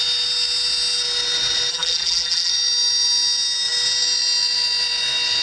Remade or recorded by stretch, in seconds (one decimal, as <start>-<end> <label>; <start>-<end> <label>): 0.0-1.7 recorded; 1.7-2.5 remade; 2.5-5.4 recorded